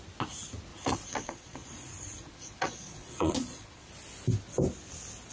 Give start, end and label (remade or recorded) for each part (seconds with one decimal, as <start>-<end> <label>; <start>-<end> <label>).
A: 0.0-0.7 recorded; 0.7-3.9 remade; 3.9-5.3 recorded